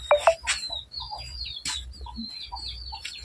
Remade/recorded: recorded